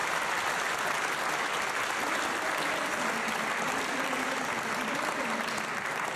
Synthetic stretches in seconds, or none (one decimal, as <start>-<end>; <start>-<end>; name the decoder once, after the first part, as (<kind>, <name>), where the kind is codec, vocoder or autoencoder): none